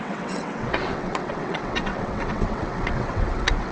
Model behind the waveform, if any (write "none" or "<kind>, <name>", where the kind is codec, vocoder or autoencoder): vocoder, WaveNeXt